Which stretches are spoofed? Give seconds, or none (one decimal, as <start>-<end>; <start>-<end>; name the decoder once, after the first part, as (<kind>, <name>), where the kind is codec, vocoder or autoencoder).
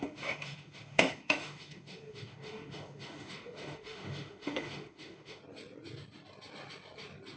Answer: 0.0-5.4 (autoencoder, DAC-VAE)